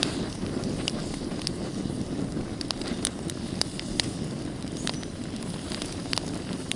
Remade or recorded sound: remade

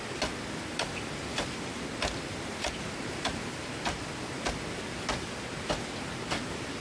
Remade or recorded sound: recorded